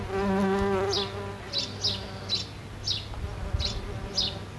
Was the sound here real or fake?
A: real